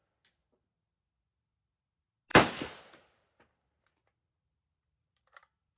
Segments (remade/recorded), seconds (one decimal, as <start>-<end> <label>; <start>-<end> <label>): 0.0-2.3 recorded; 2.3-5.8 remade